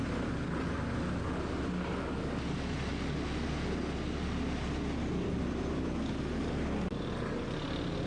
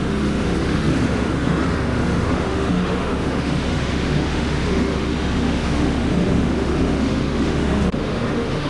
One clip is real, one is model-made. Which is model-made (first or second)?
second